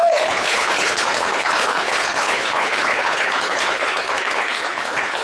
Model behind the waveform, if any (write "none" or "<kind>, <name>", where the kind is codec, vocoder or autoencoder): codec, HILCodec